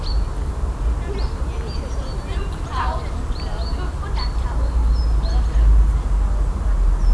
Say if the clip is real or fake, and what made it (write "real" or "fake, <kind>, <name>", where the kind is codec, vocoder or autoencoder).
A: real